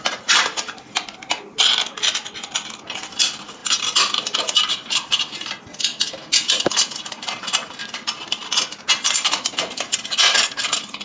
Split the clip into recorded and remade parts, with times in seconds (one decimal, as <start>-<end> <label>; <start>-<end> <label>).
0.0-11.0 recorded